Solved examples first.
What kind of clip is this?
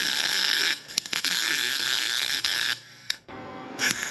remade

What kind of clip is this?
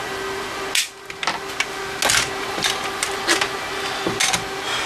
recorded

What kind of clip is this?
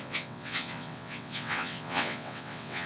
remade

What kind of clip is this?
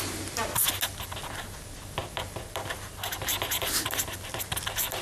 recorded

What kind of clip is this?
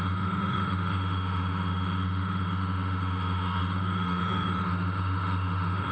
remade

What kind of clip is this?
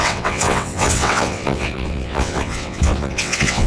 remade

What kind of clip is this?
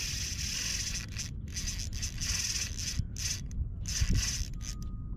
recorded